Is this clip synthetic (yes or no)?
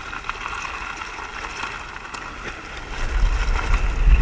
no